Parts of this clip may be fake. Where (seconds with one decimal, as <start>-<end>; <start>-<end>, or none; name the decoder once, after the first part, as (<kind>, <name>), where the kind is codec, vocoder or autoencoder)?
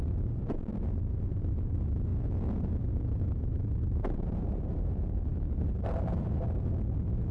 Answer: 0.0-2.1 (vocoder, BigVGAN v2); 2.8-7.3